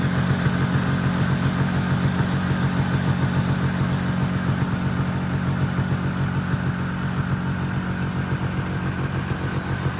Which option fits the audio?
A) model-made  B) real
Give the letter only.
B